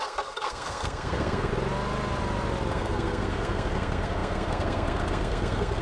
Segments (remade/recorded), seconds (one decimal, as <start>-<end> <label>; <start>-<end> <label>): 0.0-1.5 remade; 1.5-2.7 recorded; 2.7-5.8 remade